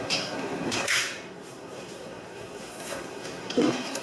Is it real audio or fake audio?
fake